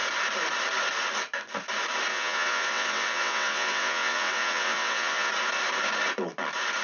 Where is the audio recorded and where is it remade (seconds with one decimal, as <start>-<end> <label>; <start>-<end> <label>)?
0.0-2.1 recorded; 2.1-5.3 remade; 5.3-6.8 recorded